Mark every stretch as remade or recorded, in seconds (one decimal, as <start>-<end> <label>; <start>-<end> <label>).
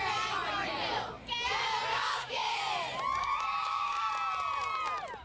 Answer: 0.0-1.9 recorded; 1.9-2.6 remade; 2.6-3.2 recorded; 3.2-4.1 remade; 4.1-5.2 recorded